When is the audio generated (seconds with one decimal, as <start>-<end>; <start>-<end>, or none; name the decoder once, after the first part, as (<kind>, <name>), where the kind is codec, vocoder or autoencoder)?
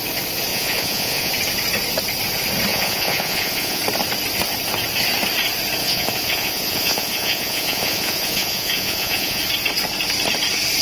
0.5-1.3 (vocoder, Vocos); 2.7-3.8; 5.8-9.4